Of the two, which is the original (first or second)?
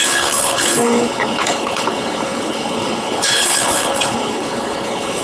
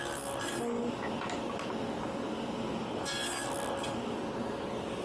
second